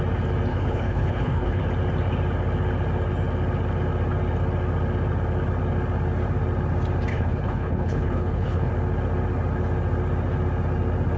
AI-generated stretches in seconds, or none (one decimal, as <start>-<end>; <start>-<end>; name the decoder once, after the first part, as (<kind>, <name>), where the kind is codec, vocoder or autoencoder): 0.5-1.6 (codec, HILCodec); 7.1-8.7